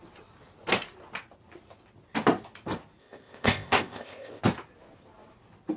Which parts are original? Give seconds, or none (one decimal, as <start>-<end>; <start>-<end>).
0.0-3.0; 4.4-5.8